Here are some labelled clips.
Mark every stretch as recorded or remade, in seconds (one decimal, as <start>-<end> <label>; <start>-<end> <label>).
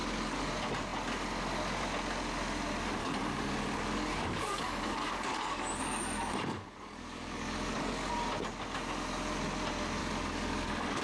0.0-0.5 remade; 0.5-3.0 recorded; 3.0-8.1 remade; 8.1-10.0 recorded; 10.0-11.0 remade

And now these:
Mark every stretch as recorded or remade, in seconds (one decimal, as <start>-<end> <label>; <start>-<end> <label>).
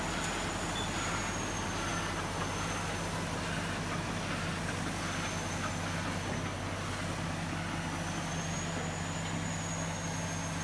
0.0-10.6 recorded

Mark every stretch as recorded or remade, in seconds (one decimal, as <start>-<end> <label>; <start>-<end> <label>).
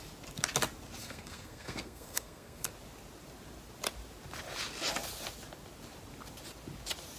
0.0-1.0 recorded; 1.0-2.7 remade; 2.7-7.2 recorded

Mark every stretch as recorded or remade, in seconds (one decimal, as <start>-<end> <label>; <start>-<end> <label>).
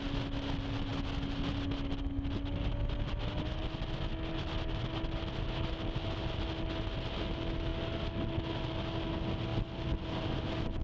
0.0-10.8 recorded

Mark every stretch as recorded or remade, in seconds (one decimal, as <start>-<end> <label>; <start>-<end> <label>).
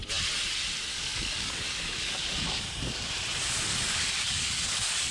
0.0-0.9 recorded; 0.9-3.1 remade; 3.1-3.7 recorded; 3.7-5.1 remade